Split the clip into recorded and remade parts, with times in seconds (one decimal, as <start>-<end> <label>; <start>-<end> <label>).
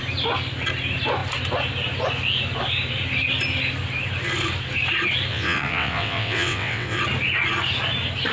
0.0-5.3 recorded; 5.3-7.0 remade; 7.0-8.3 recorded